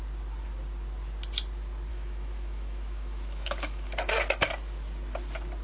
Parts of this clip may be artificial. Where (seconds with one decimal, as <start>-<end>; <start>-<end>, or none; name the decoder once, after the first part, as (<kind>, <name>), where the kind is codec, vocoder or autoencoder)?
1.9-4.1 (autoencoder, DAC-VAE)